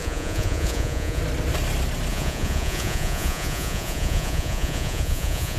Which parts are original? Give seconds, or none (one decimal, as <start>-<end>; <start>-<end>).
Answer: 1.2-2.1